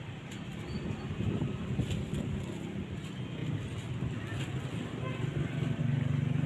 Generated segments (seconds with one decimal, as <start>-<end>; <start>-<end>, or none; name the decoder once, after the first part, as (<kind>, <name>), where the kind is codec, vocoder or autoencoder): 0.5-2.7 (vocoder, BigVGAN v2)